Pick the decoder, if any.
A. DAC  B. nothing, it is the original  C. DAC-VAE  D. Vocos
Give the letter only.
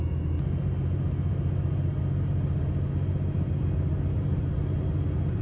B